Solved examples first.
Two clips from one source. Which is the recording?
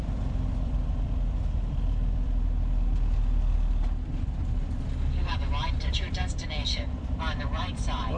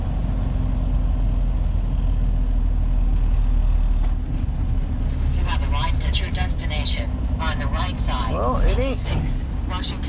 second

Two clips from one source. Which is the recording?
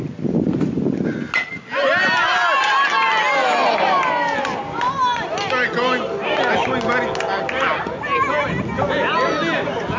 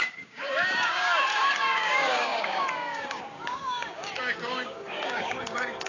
first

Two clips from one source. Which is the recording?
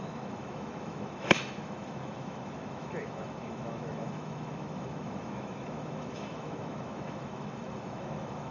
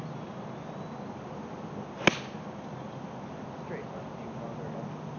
second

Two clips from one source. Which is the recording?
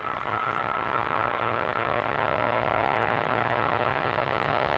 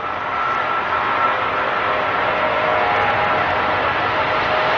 second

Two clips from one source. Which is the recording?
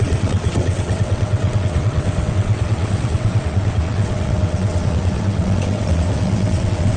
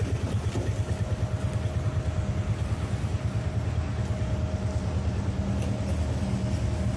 second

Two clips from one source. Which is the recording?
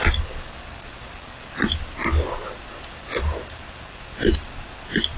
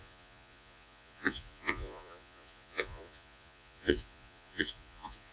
first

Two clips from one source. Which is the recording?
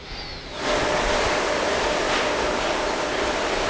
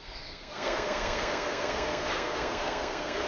first